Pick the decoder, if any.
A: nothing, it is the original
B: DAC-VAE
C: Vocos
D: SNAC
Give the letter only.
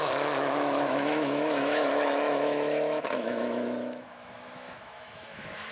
B